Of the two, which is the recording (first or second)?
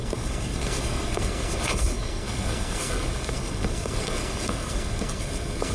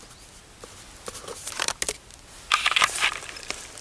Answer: second